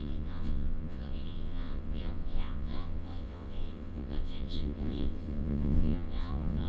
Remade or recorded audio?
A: remade